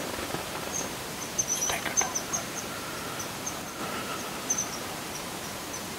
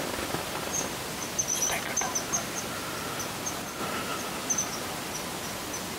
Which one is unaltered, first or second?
second